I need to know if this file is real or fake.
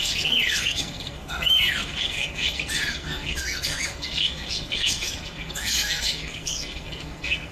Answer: fake